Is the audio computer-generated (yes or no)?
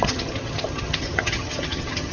yes